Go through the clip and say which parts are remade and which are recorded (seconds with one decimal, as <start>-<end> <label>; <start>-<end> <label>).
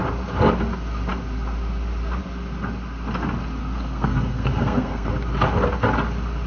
0.0-3.6 recorded; 3.6-5.1 remade; 5.1-6.5 recorded